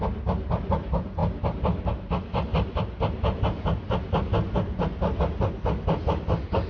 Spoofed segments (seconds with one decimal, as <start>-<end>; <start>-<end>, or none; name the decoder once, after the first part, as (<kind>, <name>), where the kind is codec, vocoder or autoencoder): none